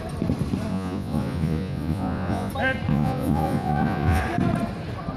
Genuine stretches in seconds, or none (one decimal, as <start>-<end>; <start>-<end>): 0.0-0.7; 2.5-2.9; 4.2-5.2